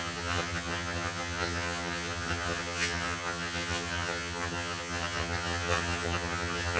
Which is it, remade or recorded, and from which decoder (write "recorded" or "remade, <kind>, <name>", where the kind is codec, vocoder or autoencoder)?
remade, vocoder, HiFi-GAN